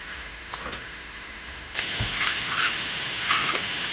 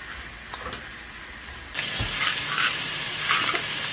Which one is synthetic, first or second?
first